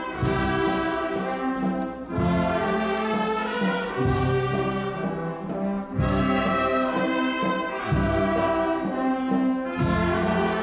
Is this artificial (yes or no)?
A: no